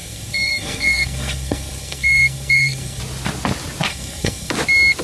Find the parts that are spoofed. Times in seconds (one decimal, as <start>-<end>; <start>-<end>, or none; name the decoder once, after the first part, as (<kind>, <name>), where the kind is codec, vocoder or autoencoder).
0.0-3.0 (codec, SNAC); 3.9-4.5